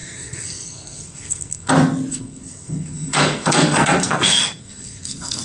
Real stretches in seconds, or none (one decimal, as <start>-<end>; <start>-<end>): 1.7-2.1